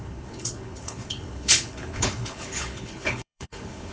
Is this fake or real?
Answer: fake